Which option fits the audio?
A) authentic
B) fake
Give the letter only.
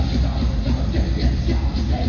A